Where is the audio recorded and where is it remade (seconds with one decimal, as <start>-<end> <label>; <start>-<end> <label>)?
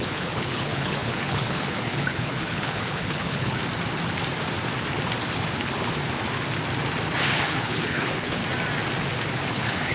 0.0-3.6 remade; 3.6-7.3 recorded; 7.3-8.4 remade; 8.4-9.5 recorded; 9.5-9.9 remade